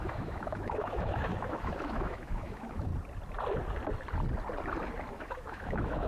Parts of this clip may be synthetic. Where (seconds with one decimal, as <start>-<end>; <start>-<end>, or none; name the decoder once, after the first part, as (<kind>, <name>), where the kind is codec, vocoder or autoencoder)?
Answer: 0.0-2.9 (autoencoder, DAC-VAE); 5.1-6.1